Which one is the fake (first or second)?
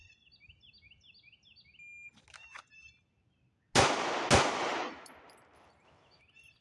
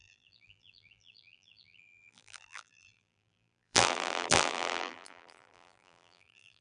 second